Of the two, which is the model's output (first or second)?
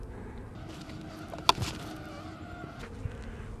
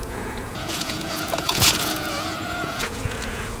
second